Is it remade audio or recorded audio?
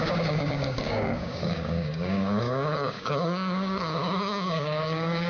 remade